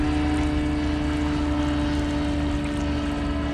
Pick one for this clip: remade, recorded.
recorded